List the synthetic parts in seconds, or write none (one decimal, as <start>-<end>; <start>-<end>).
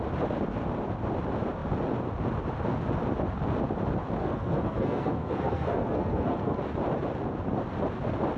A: 4.2-6.6